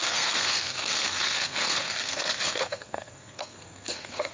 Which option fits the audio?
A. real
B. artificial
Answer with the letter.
B